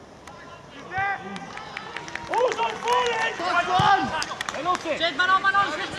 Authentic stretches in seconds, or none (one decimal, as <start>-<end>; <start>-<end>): 0.0-4.6; 5.2-6.0